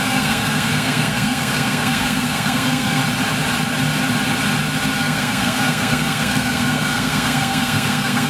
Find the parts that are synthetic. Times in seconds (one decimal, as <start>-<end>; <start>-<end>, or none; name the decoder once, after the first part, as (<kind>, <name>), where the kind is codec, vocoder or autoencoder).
0.0-3.0 (codec, SNAC); 5.0-8.3